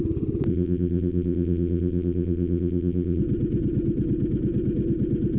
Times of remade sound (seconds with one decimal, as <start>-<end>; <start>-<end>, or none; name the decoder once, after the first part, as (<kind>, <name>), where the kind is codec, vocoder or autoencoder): 0.5-3.2 (vocoder, BigVGAN v2)